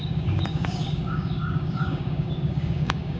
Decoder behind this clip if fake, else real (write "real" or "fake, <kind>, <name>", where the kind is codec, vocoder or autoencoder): fake, codec, DAC